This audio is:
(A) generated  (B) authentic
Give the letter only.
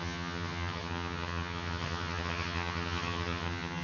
A